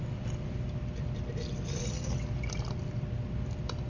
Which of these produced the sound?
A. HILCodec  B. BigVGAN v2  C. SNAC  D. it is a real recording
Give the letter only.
B